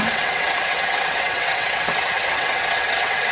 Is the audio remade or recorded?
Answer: remade